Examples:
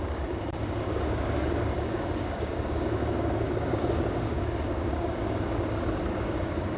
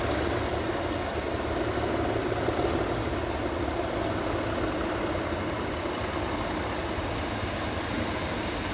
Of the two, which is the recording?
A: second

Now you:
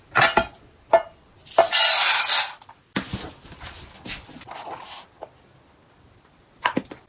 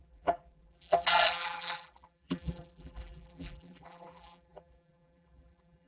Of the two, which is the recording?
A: first